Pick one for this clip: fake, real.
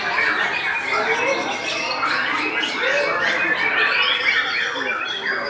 real